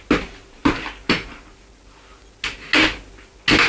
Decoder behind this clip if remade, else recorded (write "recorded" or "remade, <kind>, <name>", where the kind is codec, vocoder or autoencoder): recorded